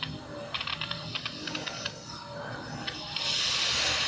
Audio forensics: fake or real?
real